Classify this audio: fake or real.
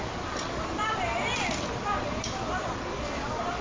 fake